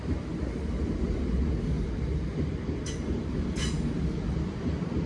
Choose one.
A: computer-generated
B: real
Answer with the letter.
B